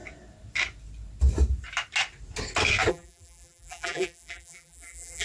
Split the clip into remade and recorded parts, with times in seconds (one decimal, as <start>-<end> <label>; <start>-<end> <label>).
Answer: 0.0-2.9 recorded; 2.9-5.2 remade